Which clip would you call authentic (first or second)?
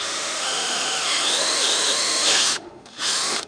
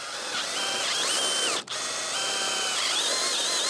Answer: second